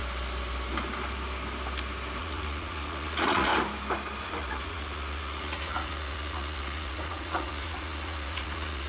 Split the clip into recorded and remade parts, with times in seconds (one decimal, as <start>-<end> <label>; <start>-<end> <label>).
0.0-2.2 recorded; 2.2-3.5 remade; 3.5-4.2 recorded; 4.2-8.9 remade